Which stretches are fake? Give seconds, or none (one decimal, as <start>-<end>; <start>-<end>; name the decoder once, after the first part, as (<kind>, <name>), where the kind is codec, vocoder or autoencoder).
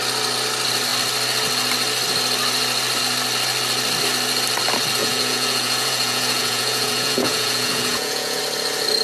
5.0-8.4 (vocoder, Vocos)